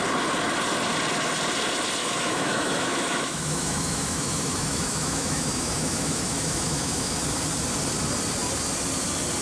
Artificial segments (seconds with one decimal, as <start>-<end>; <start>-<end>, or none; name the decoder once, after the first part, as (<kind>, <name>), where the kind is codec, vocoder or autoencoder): 2.0-7.2 (autoencoder, DAC-VAE)